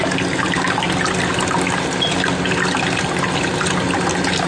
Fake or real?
real